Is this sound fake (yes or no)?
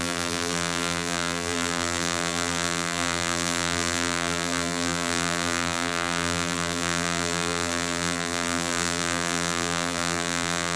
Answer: yes